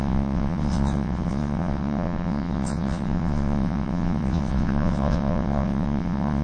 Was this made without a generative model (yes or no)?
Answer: no